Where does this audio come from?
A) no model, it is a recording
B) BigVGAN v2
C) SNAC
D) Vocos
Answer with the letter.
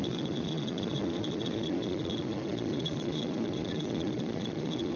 D